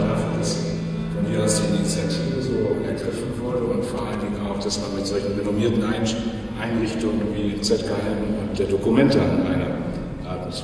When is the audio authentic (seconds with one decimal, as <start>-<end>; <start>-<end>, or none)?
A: 0.0-10.6